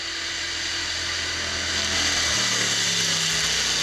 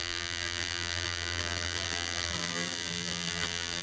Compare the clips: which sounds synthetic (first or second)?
second